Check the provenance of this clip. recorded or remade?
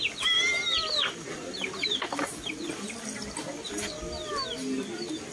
recorded